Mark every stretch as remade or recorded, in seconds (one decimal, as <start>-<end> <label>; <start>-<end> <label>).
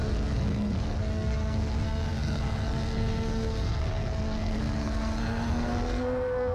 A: 0.0-6.5 remade